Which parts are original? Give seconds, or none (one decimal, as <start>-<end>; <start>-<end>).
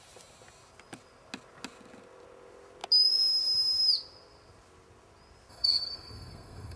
0.0-5.5